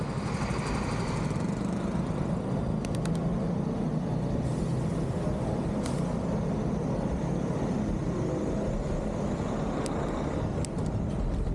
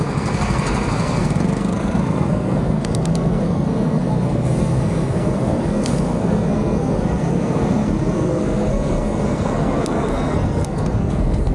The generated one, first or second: second